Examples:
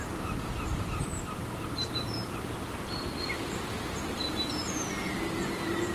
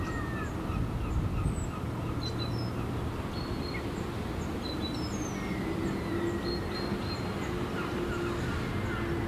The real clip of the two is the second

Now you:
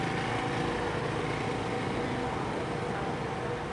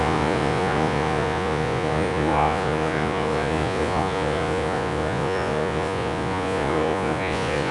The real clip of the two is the first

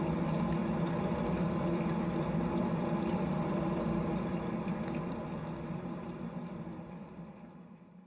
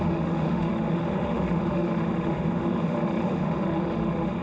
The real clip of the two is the first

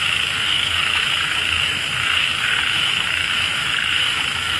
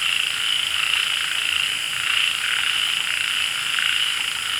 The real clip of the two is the second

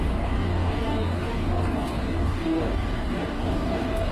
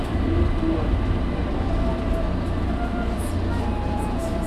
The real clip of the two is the second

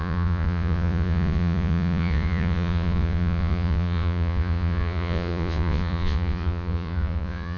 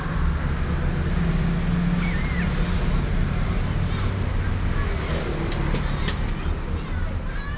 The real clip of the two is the second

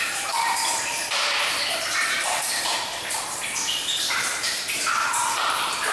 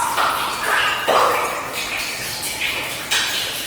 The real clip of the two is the second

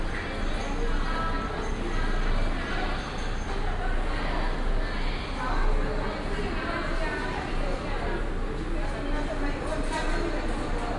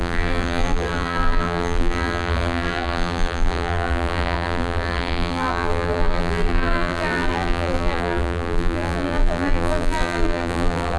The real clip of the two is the first